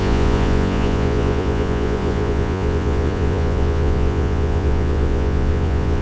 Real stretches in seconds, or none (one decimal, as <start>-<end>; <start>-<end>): none